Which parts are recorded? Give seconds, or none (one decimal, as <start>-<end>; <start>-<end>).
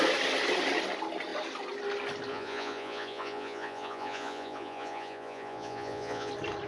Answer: 0.0-2.3; 6.3-6.7